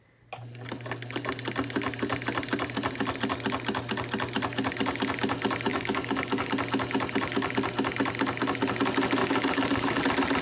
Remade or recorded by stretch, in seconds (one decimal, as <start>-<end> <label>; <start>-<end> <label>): 0.0-5.7 recorded; 5.7-6.5 remade; 6.5-9.2 recorded; 9.2-10.0 remade; 10.0-10.4 recorded